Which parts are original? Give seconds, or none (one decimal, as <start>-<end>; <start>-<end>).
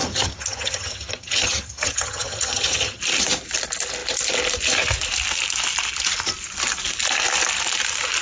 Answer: 3.0-8.2